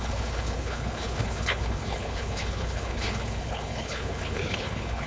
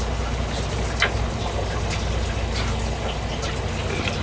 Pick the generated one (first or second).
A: first